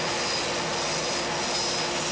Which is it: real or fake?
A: real